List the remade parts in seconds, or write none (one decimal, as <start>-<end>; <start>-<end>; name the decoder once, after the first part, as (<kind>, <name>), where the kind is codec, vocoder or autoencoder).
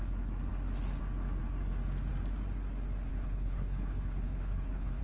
3.1-5.0 (codec, HILCodec)